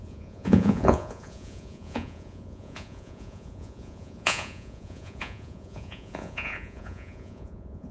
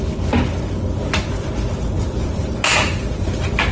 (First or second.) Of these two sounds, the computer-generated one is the first